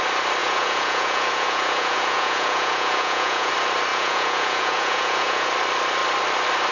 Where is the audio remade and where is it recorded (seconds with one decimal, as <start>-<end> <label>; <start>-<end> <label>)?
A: 0.0-0.4 recorded; 0.4-3.5 remade; 3.5-3.9 recorded; 3.9-5.5 remade; 5.5-6.7 recorded